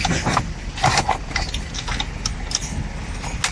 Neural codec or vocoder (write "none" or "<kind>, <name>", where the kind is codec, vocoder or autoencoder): none